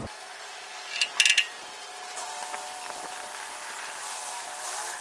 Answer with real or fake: real